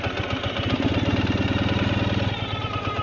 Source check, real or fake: real